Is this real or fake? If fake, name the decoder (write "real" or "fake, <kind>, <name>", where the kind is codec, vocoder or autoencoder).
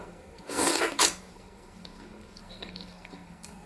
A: fake, codec, SNAC